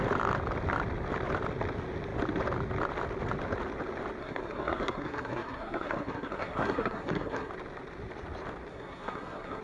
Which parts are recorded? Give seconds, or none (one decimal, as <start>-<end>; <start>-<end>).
0.0-4.2; 7.5-8.7